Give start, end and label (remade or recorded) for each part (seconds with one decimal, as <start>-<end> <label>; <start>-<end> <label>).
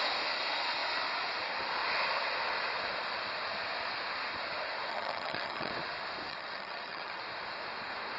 0.0-4.9 recorded; 4.9-5.7 remade; 5.7-6.3 recorded; 6.3-7.2 remade; 7.2-8.2 recorded